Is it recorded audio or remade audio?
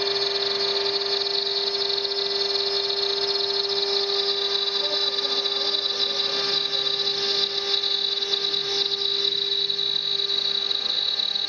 recorded